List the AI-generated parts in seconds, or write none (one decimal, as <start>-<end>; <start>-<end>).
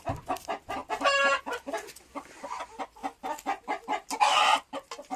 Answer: none